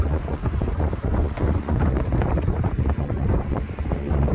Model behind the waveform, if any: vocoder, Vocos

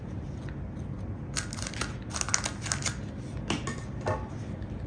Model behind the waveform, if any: none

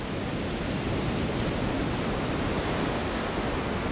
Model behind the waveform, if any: none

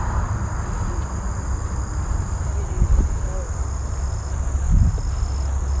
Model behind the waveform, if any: none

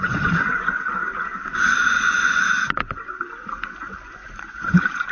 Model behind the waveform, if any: vocoder, Vocos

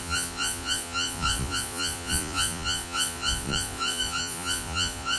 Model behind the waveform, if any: vocoder, Vocos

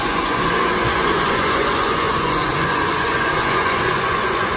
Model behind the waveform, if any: vocoder, Vocos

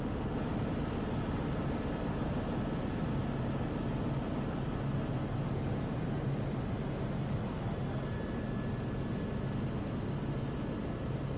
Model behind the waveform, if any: none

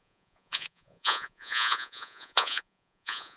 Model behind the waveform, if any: vocoder, Vocos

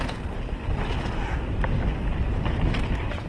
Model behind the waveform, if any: none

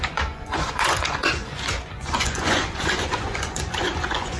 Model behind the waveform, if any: vocoder, Vocos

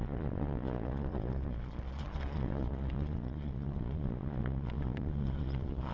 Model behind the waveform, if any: vocoder, Vocos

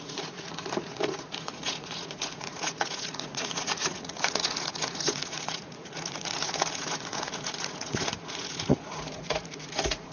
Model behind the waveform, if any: vocoder, Vocos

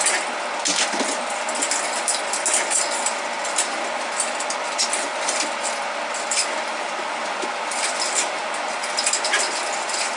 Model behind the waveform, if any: none